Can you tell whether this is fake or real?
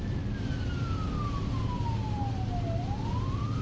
real